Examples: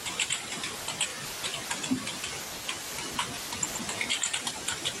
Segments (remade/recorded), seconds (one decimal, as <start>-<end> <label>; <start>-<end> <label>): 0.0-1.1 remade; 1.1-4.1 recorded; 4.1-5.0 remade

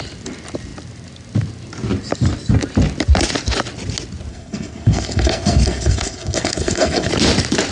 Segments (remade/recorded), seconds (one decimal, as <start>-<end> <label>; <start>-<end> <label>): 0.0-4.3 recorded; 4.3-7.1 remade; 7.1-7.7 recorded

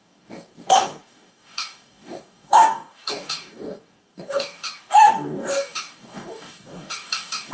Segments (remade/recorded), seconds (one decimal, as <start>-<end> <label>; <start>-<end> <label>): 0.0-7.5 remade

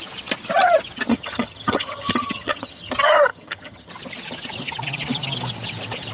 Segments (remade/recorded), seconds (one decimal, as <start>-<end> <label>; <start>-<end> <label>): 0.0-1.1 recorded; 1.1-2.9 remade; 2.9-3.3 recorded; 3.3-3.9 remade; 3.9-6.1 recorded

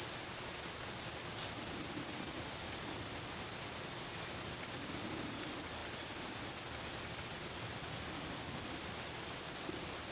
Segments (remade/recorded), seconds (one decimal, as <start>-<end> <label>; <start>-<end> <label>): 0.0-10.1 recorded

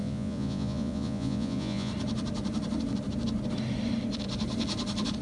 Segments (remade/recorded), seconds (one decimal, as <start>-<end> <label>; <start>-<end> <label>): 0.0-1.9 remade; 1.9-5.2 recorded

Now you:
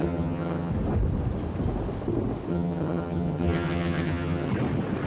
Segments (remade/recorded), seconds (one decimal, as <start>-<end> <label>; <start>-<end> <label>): 0.0-0.7 remade; 0.7-2.5 recorded; 2.5-4.5 remade; 4.5-5.1 recorded